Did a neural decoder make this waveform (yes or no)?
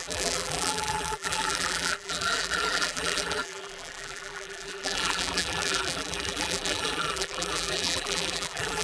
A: yes